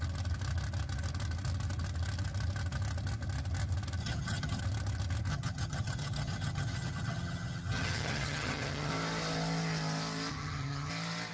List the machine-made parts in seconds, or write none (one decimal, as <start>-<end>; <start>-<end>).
4.0-4.6; 5.3-8.9; 10.3-10.9